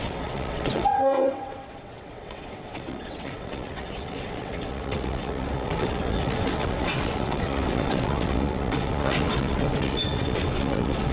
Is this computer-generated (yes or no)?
yes